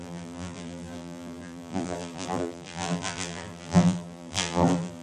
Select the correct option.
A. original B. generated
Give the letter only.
B